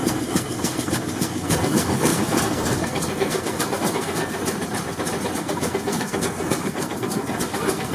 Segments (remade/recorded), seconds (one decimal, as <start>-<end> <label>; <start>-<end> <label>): 0.0-4.4 remade; 4.4-5.4 recorded; 5.4-7.9 remade